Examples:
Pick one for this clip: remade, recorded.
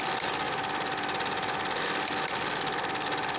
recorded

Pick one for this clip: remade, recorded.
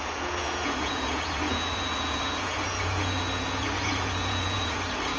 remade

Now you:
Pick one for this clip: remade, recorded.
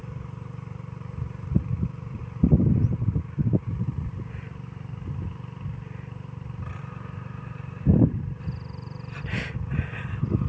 recorded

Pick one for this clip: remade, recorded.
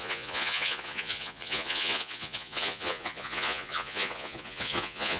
remade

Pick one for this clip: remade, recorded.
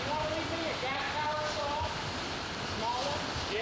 recorded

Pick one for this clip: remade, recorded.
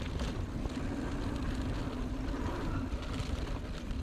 recorded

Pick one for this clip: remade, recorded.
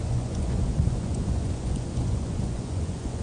remade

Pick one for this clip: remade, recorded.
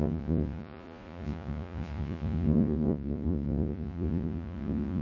remade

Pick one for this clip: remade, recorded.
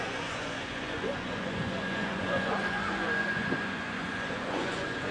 remade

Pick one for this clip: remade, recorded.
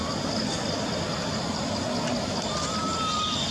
recorded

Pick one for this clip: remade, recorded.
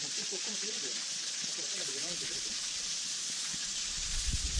remade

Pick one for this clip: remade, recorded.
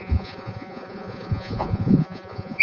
remade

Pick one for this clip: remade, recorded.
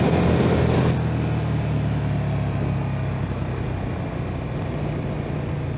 recorded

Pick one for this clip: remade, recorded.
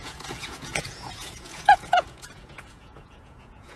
remade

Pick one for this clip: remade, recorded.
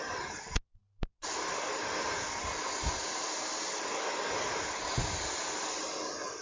recorded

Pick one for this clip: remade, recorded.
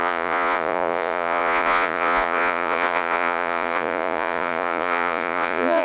remade